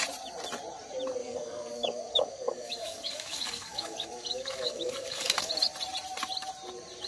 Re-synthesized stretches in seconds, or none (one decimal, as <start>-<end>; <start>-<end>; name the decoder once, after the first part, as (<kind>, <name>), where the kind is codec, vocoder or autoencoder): 1.2-5.5 (codec, DAC)